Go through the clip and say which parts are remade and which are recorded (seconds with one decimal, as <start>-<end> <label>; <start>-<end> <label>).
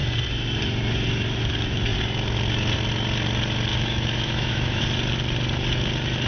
0.0-3.7 recorded; 3.7-4.8 remade; 4.8-6.3 recorded